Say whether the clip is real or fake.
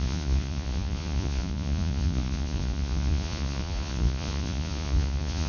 fake